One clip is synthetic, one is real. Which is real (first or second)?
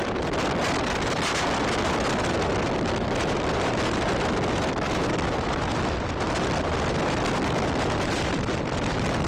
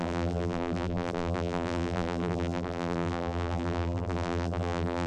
first